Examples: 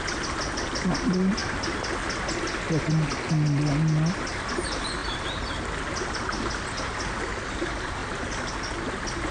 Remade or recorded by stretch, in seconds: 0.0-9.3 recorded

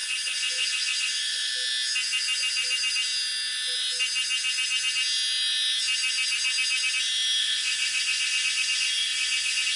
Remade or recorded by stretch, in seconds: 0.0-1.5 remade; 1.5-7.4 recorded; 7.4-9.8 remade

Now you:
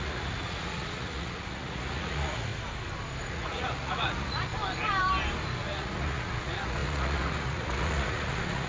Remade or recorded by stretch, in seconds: 0.0-2.5 remade; 2.5-3.3 recorded; 3.3-4.5 remade; 4.5-5.6 recorded; 5.6-8.7 remade

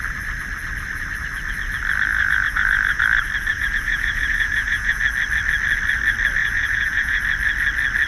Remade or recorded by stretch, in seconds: 0.0-2.1 recorded; 2.1-3.0 remade; 3.0-3.5 recorded; 3.5-5.0 remade; 5.0-6.4 recorded; 6.4-7.2 remade; 7.2-8.1 recorded

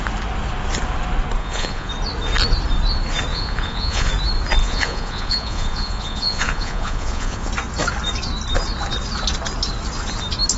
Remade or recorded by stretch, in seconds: 0.0-1.4 recorded; 1.4-1.9 remade; 1.9-3.3 recorded; 3.3-4.1 remade; 4.1-4.6 recorded; 4.6-7.5 remade; 7.5-10.6 recorded

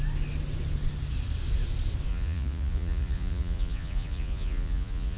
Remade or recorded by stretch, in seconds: 0.0-2.1 recorded; 2.1-5.2 remade